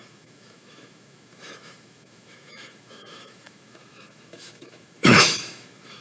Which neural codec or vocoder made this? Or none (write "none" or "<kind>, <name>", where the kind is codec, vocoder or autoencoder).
autoencoder, DAC-VAE